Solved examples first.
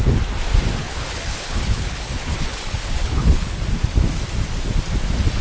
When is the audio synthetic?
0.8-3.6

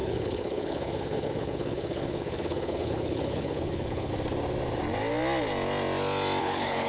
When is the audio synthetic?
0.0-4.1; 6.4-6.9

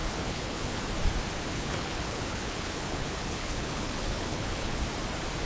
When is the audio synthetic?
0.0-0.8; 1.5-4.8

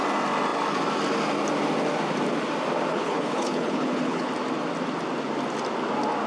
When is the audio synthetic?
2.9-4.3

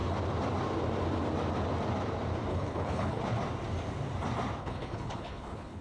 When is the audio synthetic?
2.5-3.2; 4.6-5.8

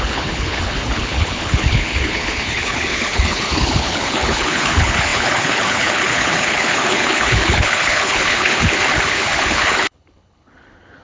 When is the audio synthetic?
0.0-11.0

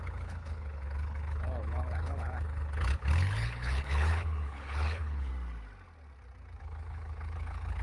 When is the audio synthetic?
0.0-5.3; 6.6-7.8

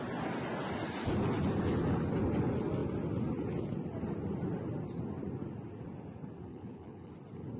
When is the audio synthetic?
6.5-7.1